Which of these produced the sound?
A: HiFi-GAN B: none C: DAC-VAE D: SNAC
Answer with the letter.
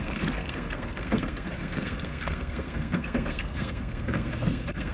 D